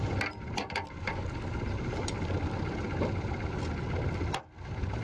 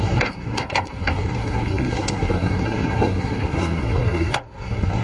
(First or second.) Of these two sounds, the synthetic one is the second